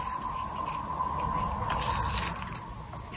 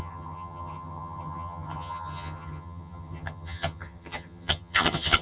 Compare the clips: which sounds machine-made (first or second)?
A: second